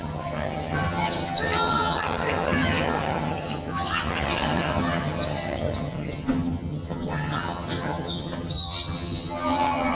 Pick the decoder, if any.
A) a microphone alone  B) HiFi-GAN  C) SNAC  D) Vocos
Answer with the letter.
B